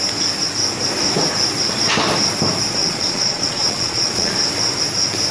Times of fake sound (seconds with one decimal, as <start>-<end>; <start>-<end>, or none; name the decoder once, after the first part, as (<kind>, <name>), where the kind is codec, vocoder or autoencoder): 2.8-4.3 (vocoder, Vocos)